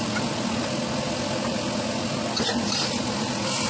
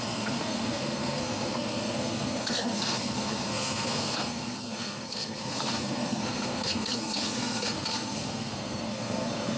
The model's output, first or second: second